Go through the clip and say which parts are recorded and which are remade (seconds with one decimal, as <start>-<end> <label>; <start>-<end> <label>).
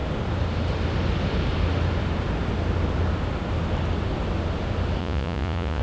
0.0-5.0 recorded; 5.0-5.8 remade